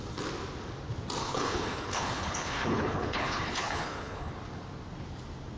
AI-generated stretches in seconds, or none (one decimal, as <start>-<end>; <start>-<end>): 1.2-4.3